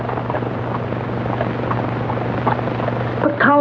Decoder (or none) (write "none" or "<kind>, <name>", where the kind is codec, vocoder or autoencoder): none